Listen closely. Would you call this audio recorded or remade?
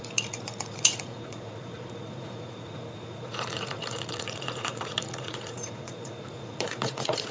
remade